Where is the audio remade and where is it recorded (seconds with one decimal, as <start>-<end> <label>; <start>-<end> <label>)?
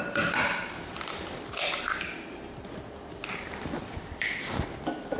0.0-2.7 remade; 2.7-3.6 recorded; 3.6-5.2 remade